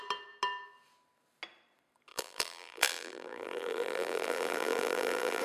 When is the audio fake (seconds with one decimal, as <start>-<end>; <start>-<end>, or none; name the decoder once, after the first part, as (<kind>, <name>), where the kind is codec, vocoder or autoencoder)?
2.1-5.4 (vocoder, BigVGAN v2)